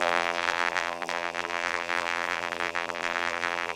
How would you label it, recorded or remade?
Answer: remade